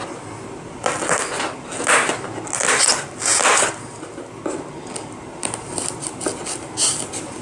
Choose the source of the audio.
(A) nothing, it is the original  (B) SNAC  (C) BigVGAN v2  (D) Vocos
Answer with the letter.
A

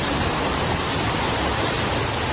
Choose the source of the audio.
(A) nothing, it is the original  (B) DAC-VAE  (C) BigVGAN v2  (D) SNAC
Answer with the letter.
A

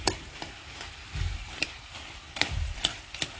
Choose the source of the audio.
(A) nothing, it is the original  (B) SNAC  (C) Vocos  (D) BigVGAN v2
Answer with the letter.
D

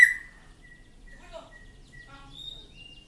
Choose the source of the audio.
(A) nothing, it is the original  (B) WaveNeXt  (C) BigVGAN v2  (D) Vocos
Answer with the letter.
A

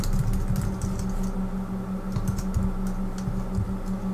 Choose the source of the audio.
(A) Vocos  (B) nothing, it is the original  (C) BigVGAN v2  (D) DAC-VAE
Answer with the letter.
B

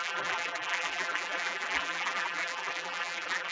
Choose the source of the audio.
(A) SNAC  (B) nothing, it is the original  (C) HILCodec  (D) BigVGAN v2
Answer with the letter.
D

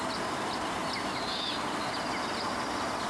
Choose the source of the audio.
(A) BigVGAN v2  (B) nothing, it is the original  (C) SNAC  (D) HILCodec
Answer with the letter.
B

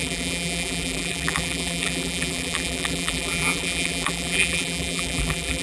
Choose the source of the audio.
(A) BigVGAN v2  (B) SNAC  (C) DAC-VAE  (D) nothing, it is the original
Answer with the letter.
A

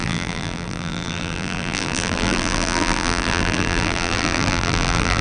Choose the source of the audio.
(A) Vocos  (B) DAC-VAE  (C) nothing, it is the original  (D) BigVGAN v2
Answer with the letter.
D